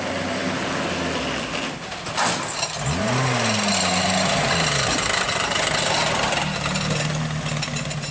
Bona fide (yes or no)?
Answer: yes